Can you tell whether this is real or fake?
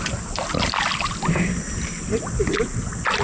real